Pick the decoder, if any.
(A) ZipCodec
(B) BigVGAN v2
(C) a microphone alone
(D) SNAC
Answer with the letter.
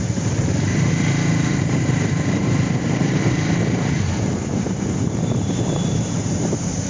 B